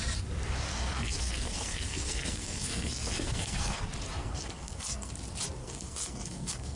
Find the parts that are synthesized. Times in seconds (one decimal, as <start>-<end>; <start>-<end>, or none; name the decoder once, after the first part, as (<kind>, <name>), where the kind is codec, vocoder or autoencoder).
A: 0.7-3.8 (codec, SNAC); 4.2-5.1; 5.6-6.8